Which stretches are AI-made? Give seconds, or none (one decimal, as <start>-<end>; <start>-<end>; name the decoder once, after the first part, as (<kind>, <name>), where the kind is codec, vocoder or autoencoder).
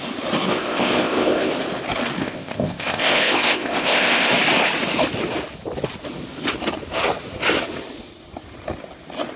0.5-1.5 (codec, ZipCodec); 2.2-4.3